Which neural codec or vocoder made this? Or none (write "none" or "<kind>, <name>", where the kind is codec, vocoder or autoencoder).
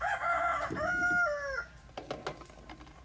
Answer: none